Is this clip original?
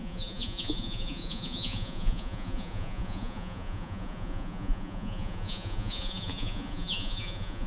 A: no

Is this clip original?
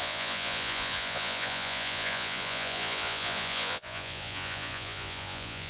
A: no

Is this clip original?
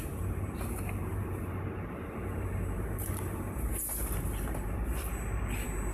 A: no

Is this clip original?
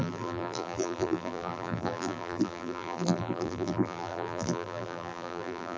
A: no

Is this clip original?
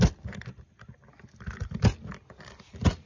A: yes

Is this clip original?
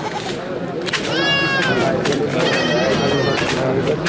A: yes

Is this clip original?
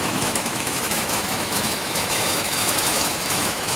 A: no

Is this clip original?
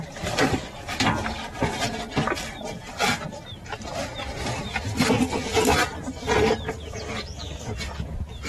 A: yes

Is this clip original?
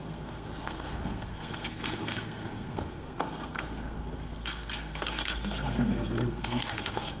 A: no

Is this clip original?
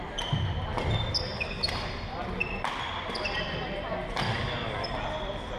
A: yes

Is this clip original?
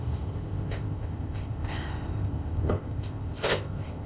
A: no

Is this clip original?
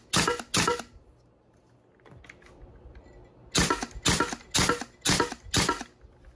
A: yes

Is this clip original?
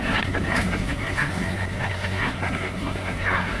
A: no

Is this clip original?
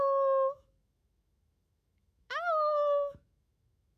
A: no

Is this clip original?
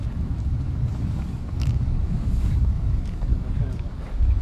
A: no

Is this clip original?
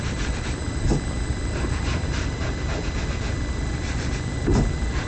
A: no